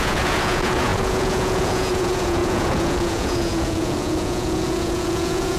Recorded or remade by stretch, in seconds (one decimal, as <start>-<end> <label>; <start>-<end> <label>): 0.0-5.6 remade